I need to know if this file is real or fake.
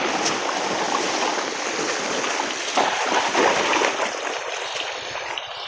real